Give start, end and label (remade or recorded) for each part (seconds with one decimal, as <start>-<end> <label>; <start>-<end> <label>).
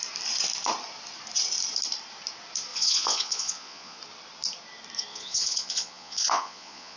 0.0-2.7 recorded; 2.7-4.0 remade; 4.0-5.1 recorded; 5.1-7.0 remade